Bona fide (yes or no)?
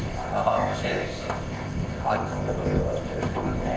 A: no